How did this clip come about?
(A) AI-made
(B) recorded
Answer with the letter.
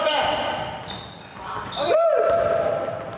B